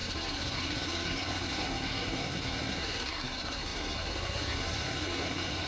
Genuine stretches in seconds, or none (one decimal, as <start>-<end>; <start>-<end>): none